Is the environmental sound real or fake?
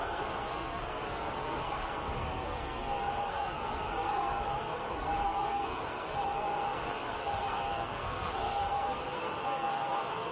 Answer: fake